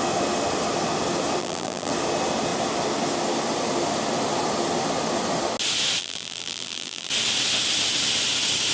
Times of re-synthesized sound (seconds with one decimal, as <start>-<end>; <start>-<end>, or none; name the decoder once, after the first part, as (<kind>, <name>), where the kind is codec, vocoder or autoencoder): 1.4-1.9 (vocoder, BigVGAN v2); 6.0-7.1